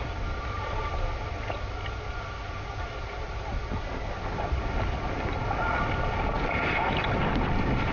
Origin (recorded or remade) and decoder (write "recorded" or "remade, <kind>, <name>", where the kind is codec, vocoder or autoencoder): recorded